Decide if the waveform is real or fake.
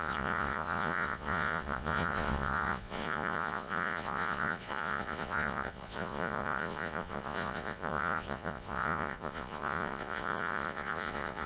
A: fake